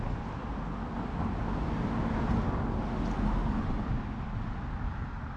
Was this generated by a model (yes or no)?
no